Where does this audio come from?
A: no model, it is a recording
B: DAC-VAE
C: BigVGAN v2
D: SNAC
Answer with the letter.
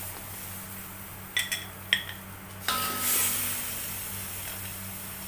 A